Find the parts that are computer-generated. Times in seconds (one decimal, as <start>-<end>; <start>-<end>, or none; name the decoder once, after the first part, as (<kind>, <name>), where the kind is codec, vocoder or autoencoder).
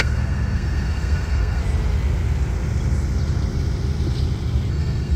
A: 0.0-1.6 (codec, SNAC); 4.7-5.2